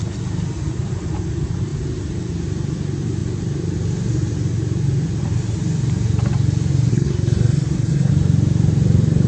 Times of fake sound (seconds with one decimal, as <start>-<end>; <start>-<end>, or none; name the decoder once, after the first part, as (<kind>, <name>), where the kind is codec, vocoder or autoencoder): 6.9-8.1 (codec, SNAC)